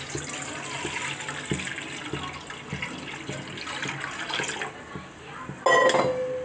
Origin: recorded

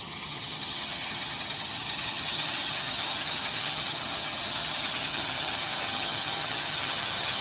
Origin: remade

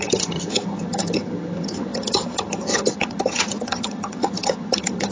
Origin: remade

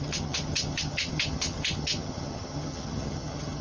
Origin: remade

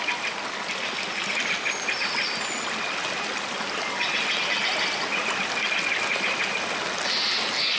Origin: recorded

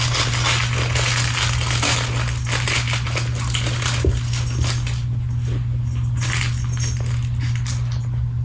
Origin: recorded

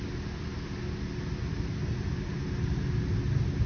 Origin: recorded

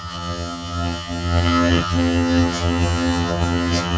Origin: remade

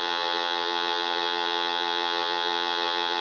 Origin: remade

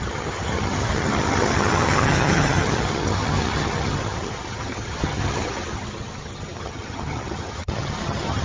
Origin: remade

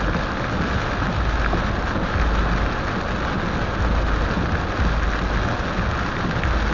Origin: recorded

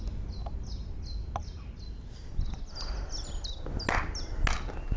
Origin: recorded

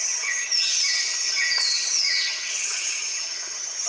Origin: remade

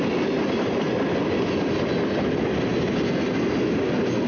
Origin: recorded